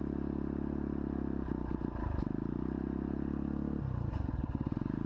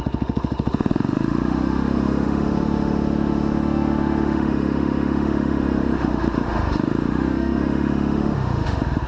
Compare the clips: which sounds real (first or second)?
first